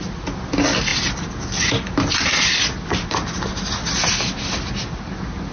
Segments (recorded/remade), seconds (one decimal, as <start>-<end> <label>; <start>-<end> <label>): 0.0-5.5 recorded